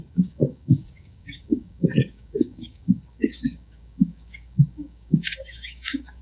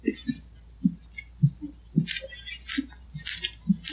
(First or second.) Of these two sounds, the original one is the second